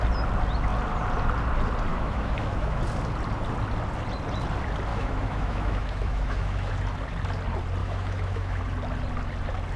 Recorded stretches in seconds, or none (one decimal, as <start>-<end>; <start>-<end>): 0.0-1.9; 2.8-4.9; 6.7-7.8; 8.6-9.8